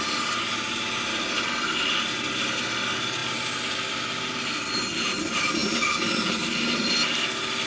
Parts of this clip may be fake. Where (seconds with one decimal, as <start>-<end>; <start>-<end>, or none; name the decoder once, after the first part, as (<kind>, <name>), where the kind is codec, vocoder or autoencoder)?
none